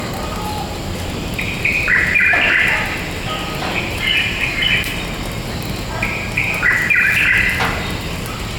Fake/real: real